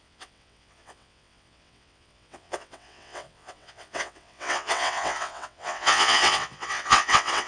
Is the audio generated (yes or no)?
yes